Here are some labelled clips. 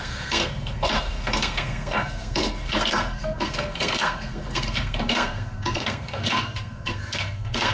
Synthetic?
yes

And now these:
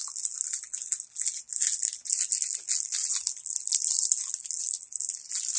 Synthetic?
no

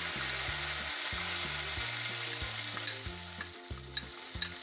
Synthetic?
no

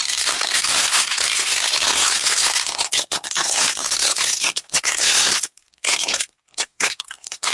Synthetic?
yes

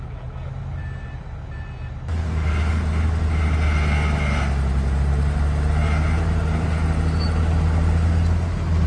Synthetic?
no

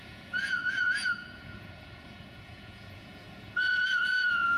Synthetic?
yes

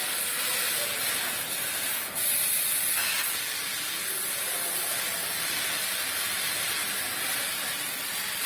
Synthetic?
no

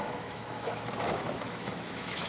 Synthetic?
yes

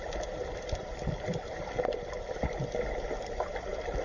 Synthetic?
no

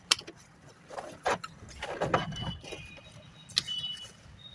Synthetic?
no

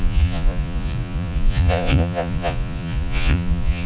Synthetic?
yes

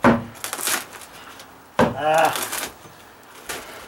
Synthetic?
no